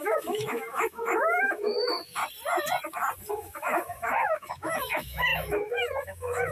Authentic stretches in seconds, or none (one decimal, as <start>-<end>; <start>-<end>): 2.2-3.3